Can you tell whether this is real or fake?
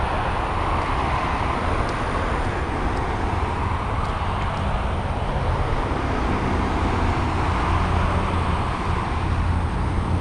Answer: real